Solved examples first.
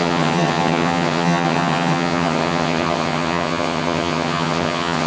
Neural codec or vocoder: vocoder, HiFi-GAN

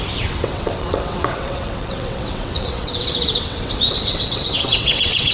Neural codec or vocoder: vocoder, WaveNeXt